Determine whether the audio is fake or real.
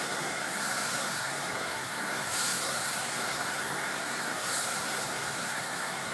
fake